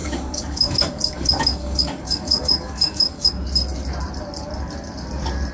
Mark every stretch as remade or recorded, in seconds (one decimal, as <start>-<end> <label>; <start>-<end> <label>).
0.0-3.3 remade; 3.3-5.5 recorded